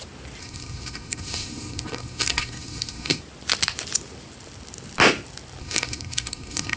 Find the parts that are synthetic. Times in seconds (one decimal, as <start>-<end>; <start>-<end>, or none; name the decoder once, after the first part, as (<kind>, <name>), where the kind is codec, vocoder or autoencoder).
0.4-3.2 (codec, SNAC); 5.6-6.8